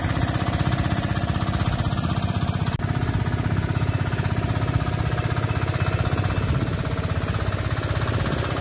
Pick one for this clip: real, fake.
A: real